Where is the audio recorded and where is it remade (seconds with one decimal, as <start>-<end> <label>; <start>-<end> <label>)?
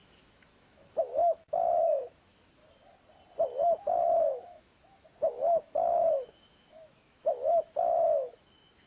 0.0-2.6 remade; 2.6-3.8 recorded; 3.8-8.9 remade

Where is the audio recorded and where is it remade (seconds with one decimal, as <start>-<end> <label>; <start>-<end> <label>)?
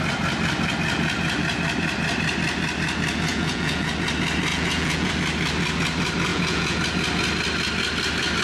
0.0-3.3 recorded; 3.3-3.9 remade; 3.9-4.5 recorded; 4.5-5.1 remade; 5.1-6.3 recorded; 6.3-6.8 remade; 6.8-8.4 recorded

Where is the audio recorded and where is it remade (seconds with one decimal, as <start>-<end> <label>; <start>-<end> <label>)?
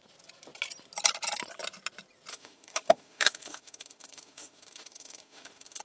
0.0-2.3 recorded; 2.3-5.8 remade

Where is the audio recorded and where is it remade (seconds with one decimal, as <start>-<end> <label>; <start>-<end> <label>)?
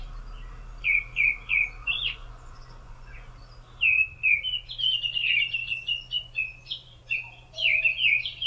0.0-1.8 recorded; 1.8-3.3 remade; 3.3-5.6 recorded; 5.6-8.5 remade